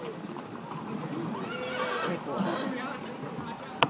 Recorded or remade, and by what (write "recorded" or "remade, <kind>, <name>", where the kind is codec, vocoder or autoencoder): recorded